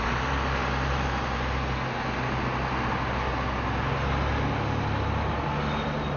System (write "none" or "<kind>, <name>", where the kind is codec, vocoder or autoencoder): none